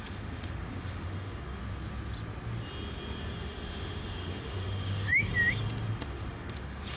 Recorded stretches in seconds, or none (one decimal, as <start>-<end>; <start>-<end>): 1.6-3.4; 5.3-5.9

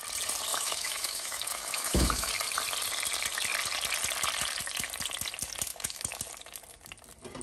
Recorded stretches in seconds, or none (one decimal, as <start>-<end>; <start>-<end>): 0.0-0.5; 2.3-5.7; 6.2-7.4

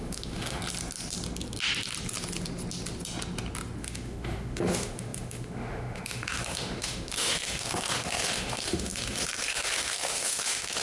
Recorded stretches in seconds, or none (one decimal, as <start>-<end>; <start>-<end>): 0.6-3.8

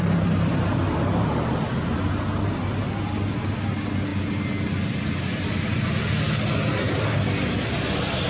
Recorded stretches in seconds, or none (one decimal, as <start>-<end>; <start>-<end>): 0.0-8.3

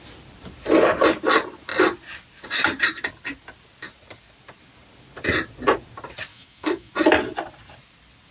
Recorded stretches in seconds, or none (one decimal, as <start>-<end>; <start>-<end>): 0.0-6.3; 6.9-8.3

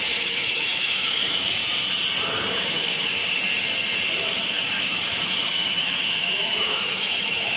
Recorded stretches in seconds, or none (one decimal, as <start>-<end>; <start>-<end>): 1.6-2.5; 3.2-4.1